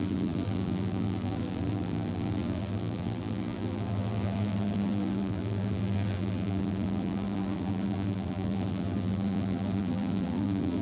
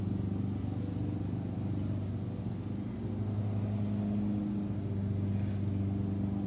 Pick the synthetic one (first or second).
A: first